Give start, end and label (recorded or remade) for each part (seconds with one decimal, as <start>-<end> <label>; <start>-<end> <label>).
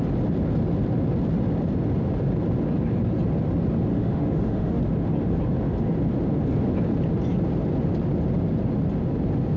0.0-3.9 recorded; 3.9-4.8 remade; 4.8-9.6 recorded